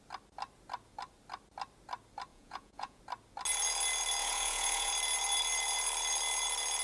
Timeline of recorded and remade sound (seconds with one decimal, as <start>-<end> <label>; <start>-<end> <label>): 0.0-2.3 recorded; 2.3-3.0 remade; 3.0-4.2 recorded; 4.2-4.9 remade; 4.9-6.8 recorded